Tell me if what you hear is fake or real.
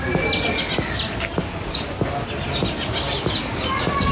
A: real